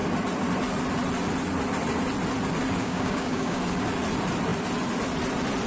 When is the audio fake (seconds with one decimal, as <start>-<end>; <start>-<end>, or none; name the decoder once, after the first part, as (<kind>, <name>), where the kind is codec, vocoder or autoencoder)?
2.8-3.6 (codec, DAC)